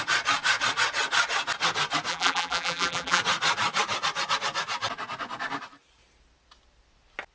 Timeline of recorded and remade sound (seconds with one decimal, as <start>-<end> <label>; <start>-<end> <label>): 0.0-2.1 recorded; 2.1-3.2 remade; 3.2-7.3 recorded